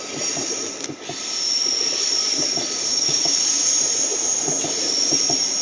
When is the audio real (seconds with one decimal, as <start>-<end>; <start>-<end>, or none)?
0.0-2.9; 3.4-5.6